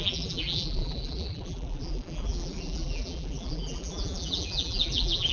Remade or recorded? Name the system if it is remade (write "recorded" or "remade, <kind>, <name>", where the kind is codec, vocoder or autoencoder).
remade, vocoder, BigVGAN v2